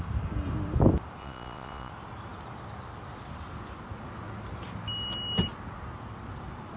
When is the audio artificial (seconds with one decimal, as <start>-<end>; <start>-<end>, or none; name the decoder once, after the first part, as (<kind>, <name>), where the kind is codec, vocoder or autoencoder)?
1.2-1.9 (vocoder, Vocos)